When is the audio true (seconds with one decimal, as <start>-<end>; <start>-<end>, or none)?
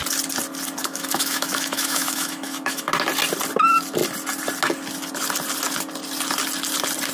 0.0-0.8; 2.9-7.1